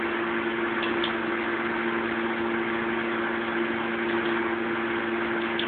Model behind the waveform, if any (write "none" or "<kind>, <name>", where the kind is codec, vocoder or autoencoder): none